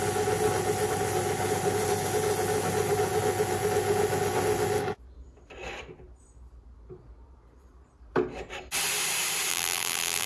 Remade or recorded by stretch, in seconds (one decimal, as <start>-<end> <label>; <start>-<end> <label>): 0.0-9.5 recorded; 9.5-10.3 remade